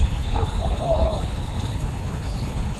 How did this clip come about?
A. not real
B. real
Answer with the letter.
A